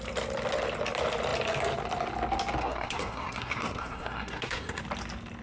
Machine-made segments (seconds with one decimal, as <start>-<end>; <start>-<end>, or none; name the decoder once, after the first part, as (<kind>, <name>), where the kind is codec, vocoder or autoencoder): 2.6-4.8 (codec, SNAC)